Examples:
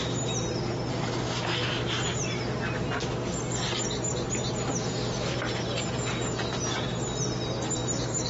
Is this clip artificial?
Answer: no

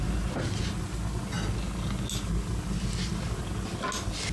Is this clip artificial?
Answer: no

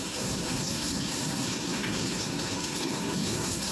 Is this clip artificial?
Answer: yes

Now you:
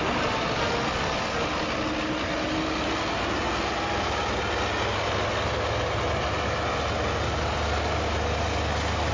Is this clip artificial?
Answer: no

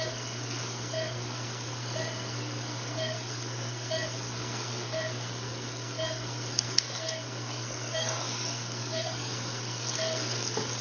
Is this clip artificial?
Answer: yes